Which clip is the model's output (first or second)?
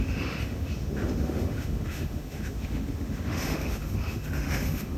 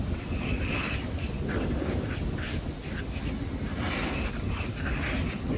first